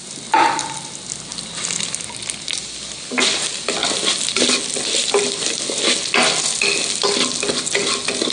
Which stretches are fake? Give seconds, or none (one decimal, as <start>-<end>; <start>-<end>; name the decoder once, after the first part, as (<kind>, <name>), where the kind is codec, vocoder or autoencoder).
none